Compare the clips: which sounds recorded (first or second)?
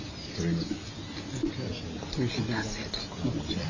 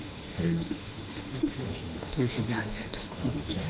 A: first